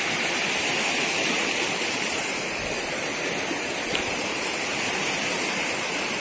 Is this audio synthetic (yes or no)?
no